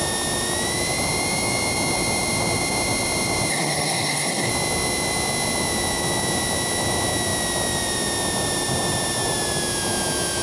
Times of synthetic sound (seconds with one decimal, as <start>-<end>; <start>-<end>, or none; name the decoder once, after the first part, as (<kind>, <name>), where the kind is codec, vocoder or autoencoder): 3.5-4.5 (codec, SNAC)